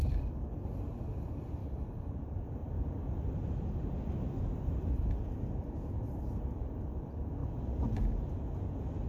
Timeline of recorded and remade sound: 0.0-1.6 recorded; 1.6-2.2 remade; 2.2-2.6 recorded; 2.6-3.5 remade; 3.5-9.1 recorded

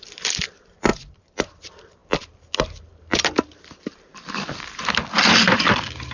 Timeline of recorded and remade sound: 0.0-2.0 remade; 2.0-2.9 recorded; 2.9-6.1 remade

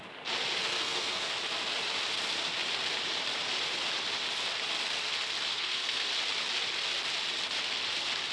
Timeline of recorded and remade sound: 0.0-0.6 recorded; 0.6-1.3 remade; 1.3-5.5 recorded; 5.5-6.1 remade; 6.1-8.3 recorded

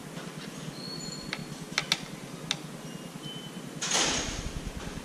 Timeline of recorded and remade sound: 0.0-5.0 recorded

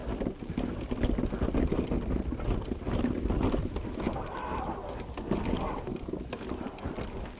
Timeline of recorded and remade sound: 0.0-7.4 recorded

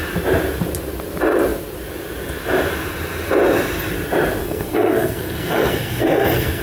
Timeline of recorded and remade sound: 0.0-4.4 recorded; 4.4-6.6 remade